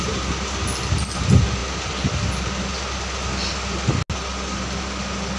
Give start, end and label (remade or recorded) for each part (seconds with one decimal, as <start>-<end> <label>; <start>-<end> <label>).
0.0-5.4 recorded